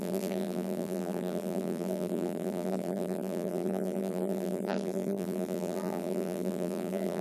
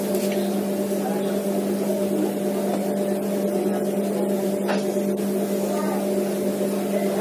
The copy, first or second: first